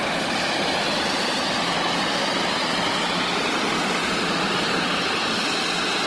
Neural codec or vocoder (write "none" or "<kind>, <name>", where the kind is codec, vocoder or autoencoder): none